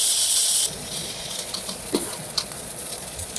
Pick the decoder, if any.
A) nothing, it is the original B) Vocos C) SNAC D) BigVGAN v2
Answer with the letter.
B